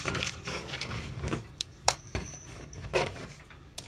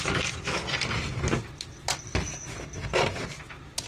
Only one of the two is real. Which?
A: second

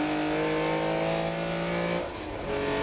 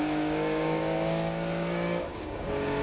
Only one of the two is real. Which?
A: first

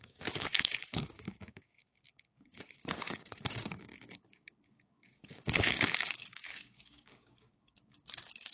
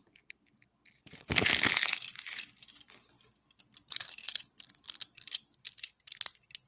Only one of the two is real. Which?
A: second